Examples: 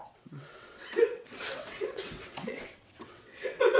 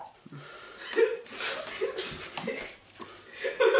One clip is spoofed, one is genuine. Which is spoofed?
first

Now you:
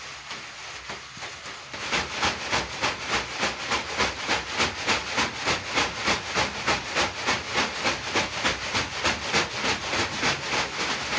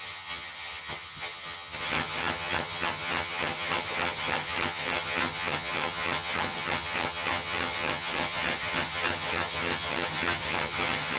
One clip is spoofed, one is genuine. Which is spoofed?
second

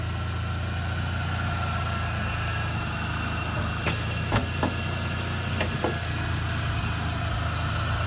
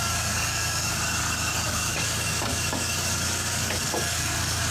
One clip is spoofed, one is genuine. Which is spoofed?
second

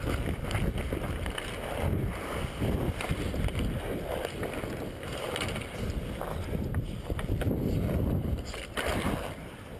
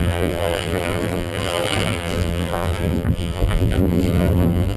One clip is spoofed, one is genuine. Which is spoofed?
second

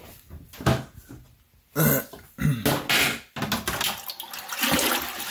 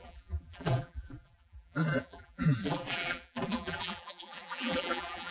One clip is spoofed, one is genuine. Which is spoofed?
second